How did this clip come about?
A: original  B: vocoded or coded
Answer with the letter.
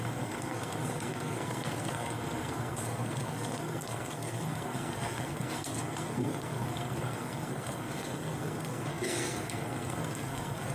B